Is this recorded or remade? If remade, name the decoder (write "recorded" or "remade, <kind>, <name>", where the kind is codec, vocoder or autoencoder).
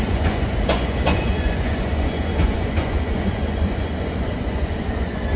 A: remade, vocoder, Vocos